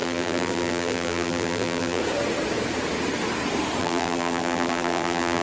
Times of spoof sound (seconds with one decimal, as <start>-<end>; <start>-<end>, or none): 0.0-2.0; 3.8-5.4